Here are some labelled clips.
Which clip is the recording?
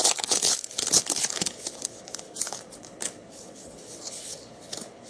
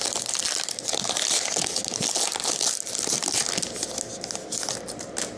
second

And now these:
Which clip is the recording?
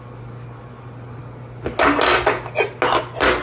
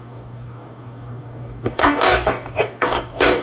first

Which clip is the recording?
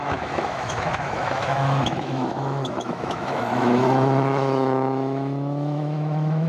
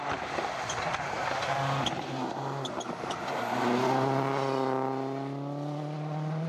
second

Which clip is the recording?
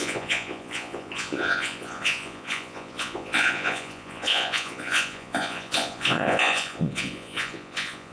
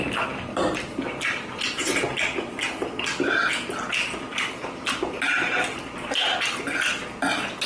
second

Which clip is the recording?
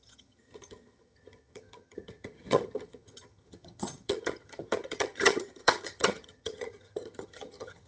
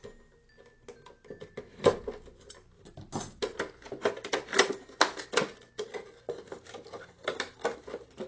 second